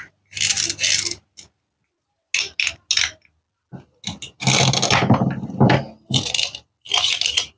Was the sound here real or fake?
real